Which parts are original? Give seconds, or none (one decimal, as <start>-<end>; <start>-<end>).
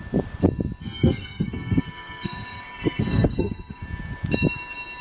0.0-0.8; 3.8-5.0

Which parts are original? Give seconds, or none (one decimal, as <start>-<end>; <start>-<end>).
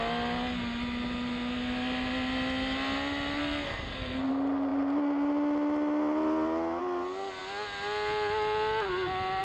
0.0-3.4; 4.3-9.4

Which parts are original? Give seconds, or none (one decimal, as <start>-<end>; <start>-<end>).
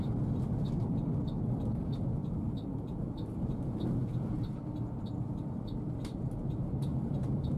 0.0-6.9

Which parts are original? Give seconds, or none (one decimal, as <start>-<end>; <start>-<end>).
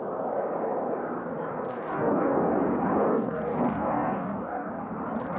0.0-1.7; 2.5-3.0; 4.7-5.4